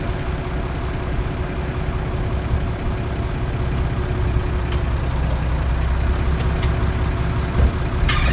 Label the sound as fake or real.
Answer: real